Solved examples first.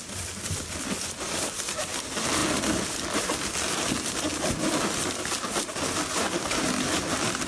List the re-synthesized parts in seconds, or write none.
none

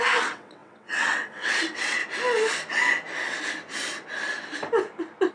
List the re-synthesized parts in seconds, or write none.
0.0-2.0 (vocoder, WaveNeXt)

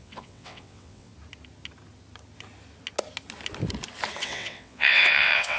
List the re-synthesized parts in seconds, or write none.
0.0-1.1 (vocoder, WaveNeXt); 4.2-5.6

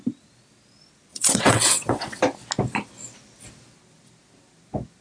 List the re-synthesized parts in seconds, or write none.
1.1-2.2 (vocoder, WaveNeXt)

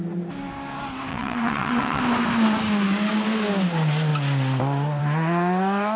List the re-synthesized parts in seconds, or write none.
1.1-2.0 (vocoder, WaveNeXt)

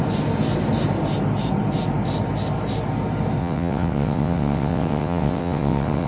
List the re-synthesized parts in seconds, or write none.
3.4-6.1 (vocoder, WaveNeXt)